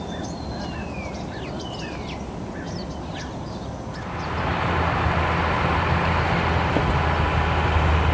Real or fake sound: real